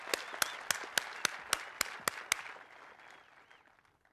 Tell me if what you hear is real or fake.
real